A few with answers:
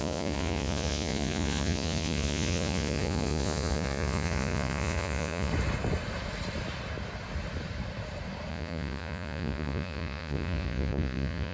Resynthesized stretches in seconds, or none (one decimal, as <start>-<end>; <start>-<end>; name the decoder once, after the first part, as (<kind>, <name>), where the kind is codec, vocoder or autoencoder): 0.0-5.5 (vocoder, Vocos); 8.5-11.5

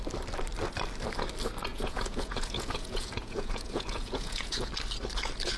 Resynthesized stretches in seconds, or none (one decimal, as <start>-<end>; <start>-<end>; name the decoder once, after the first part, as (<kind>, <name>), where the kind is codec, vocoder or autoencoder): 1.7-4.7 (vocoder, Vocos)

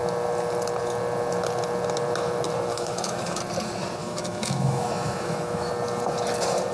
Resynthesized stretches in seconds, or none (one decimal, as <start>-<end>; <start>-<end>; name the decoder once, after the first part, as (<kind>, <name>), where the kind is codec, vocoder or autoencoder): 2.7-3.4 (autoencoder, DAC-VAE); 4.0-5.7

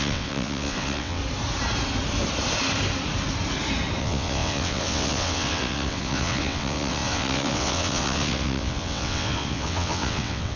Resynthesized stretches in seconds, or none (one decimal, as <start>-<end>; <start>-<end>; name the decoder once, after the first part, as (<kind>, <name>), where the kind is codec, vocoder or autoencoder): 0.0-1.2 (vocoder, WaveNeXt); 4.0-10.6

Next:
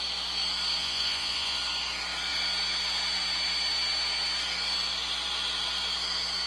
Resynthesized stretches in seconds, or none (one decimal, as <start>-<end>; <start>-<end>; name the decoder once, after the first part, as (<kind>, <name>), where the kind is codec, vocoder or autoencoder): 0.8-1.6 (vocoder, Vocos)

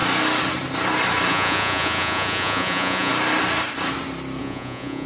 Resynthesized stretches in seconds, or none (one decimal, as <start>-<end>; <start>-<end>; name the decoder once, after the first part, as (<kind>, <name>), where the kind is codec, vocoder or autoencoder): 1.3-3.1 (vocoder, Vocos); 4.4-5.1